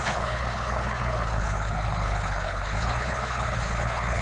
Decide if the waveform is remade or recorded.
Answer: remade